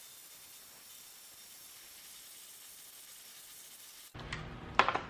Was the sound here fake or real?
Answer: real